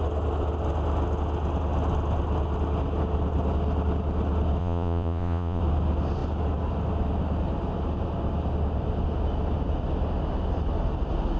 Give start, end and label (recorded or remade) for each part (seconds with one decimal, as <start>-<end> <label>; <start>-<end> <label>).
0.0-4.6 recorded; 4.6-5.6 remade; 5.6-11.4 recorded